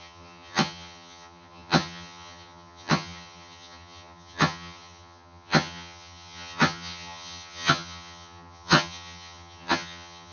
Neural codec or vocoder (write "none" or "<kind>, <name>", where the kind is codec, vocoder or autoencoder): vocoder, HiFi-GAN